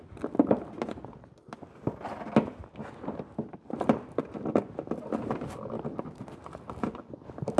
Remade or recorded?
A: recorded